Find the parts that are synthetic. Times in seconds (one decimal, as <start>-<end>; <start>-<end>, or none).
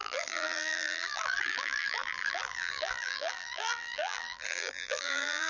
0.0-5.5